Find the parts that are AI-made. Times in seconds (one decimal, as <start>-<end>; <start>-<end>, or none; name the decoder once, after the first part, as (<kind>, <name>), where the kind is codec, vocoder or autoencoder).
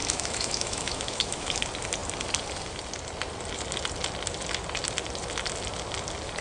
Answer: 0.0-1.6 (autoencoder, DAC-VAE)